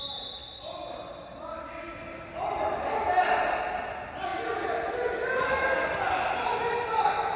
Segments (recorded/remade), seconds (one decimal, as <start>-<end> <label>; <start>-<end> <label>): 0.0-7.4 recorded